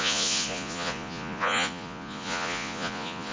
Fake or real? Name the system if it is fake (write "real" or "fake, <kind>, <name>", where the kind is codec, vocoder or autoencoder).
fake, vocoder, Vocos